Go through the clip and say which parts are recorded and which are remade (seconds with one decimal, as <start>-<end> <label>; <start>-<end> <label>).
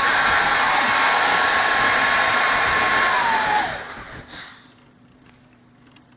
0.0-0.5 remade; 0.5-1.1 recorded; 1.1-6.2 remade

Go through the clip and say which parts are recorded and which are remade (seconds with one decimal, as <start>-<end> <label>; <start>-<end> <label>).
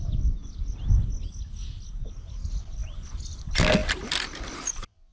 0.0-5.1 recorded